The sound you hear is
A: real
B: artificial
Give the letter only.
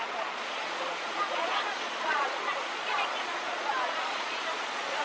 B